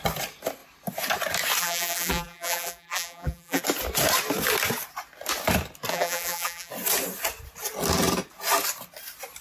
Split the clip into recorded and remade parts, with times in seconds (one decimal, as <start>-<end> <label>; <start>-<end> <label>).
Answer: 0.0-1.6 recorded; 1.6-3.6 remade; 3.6-5.9 recorded; 5.9-6.7 remade; 6.7-9.4 recorded